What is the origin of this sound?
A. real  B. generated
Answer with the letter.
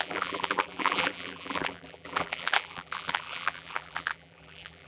B